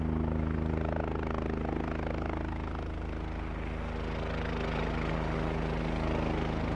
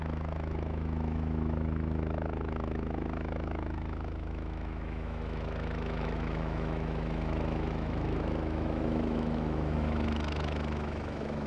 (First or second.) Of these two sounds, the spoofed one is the second